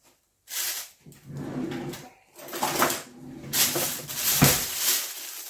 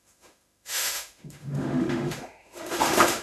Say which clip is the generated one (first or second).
second